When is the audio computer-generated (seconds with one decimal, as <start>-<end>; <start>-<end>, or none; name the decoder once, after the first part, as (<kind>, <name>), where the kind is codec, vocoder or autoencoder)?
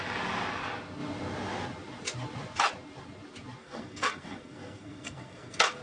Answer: 3.6-5.8 (codec, SNAC)